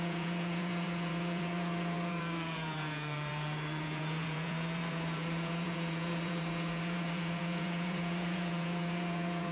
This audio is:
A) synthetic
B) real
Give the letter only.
A